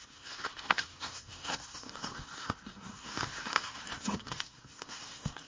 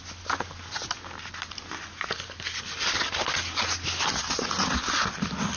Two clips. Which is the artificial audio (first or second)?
first